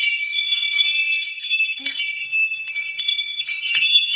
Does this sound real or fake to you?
fake